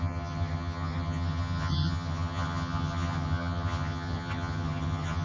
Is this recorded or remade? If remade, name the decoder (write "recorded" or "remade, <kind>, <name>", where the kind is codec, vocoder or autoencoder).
remade, vocoder, HiFi-GAN